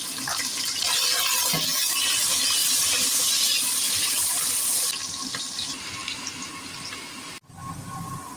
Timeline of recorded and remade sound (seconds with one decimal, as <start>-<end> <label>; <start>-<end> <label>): 0.0-2.6 recorded; 2.6-4.9 remade; 4.9-6.0 recorded; 6.0-7.4 remade; 7.4-8.4 recorded